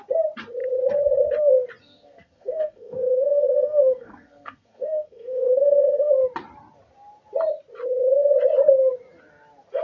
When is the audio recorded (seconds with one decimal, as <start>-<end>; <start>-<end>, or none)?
0.0-1.8; 6.1-9.8